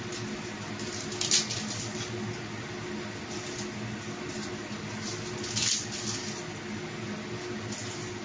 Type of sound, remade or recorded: recorded